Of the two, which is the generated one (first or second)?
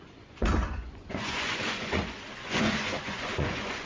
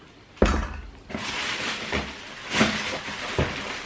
first